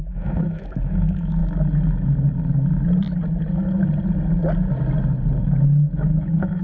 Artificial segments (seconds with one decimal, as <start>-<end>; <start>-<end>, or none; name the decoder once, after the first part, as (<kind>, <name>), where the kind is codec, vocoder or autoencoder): 0.0-1.4 (autoencoder, DAC-VAE); 5.4-6.6